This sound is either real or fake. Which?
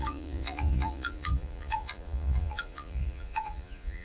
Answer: fake